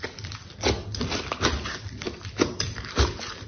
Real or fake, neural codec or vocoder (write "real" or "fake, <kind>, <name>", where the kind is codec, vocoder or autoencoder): real